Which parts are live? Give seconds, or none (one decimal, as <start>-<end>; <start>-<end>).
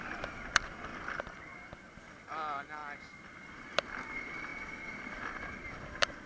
0.9-1.9; 2.8-3.5